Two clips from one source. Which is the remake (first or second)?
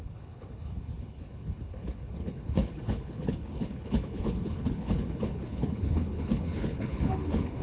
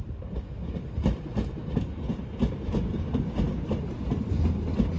first